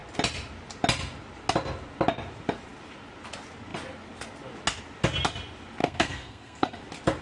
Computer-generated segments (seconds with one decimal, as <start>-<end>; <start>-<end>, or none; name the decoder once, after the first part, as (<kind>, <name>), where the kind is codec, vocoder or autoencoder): 5.8-6.8 (codec, SNAC)